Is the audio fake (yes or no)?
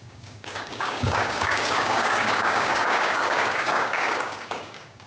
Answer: yes